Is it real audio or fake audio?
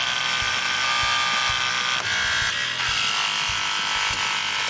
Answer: real